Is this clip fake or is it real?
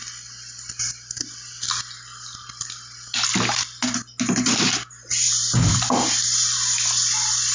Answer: real